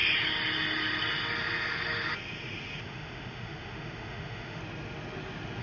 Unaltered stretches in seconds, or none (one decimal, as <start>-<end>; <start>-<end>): 0.0-2.8; 4.6-5.6